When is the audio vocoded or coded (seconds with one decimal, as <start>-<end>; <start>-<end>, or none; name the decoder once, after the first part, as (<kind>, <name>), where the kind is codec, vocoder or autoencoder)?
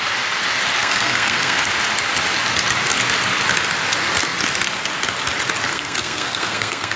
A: 0.8-1.7 (codec, SNAC); 5.7-7.0